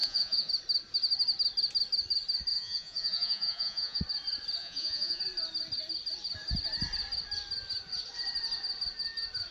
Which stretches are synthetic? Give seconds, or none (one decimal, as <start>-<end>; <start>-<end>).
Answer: 0.0-0.5; 2.5-4.0; 4.6-5.2